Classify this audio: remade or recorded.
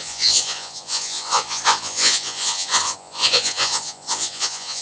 remade